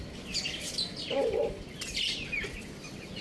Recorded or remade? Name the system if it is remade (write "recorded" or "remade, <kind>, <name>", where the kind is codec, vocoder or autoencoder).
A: recorded